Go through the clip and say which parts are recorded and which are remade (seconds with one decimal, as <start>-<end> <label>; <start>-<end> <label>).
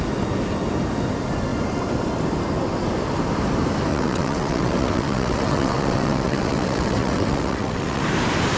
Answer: 0.0-3.9 recorded; 3.9-8.0 remade; 8.0-8.6 recorded